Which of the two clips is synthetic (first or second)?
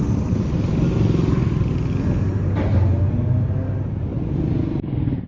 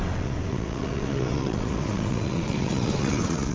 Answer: second